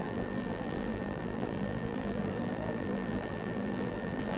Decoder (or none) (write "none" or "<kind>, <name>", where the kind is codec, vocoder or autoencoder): vocoder, BigVGAN v2